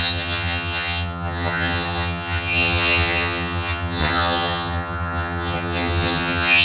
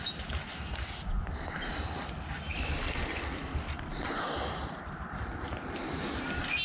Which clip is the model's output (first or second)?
first